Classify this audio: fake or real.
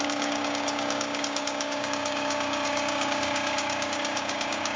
fake